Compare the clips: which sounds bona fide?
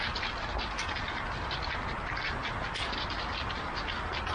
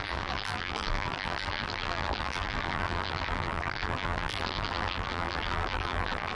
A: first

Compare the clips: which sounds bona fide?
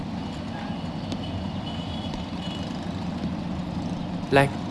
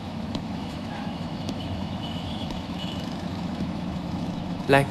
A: first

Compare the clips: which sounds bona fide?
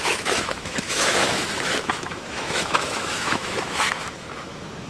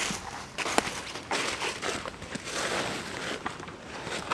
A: second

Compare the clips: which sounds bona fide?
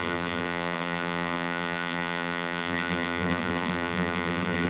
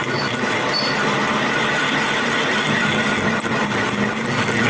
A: second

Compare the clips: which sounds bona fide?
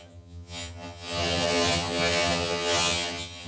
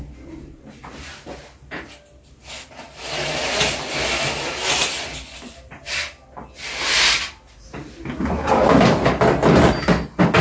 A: second